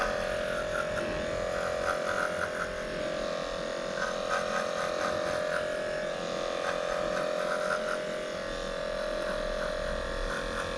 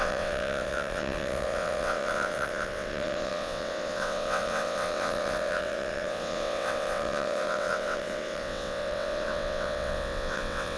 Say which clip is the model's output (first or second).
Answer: second